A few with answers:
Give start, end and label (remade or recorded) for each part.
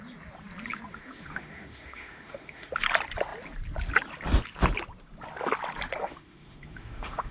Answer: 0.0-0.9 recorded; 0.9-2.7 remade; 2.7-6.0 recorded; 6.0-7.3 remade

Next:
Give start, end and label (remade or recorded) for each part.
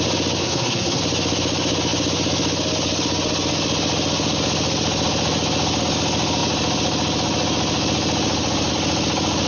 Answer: 0.0-0.4 recorded; 0.4-1.0 remade; 1.0-9.5 recorded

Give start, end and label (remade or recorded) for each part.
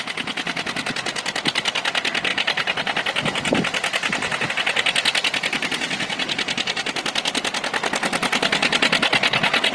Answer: 0.0-9.7 recorded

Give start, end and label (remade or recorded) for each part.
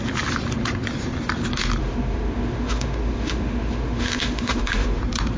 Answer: 0.0-1.8 recorded; 1.8-5.0 remade; 5.0-5.4 recorded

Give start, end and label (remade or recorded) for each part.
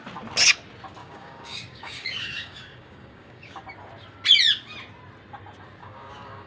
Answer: 0.0-1.0 recorded; 1.0-3.6 remade; 3.6-5.8 recorded; 5.8-6.5 remade